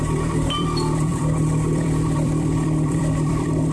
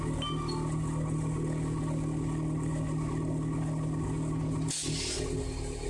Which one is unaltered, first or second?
second